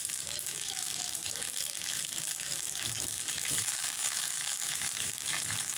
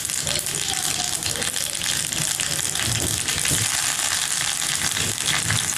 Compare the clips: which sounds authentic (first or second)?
second